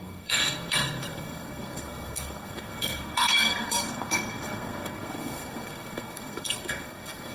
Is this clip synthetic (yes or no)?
yes